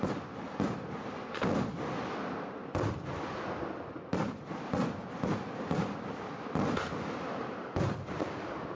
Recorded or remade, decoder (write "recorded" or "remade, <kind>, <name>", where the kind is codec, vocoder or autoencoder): recorded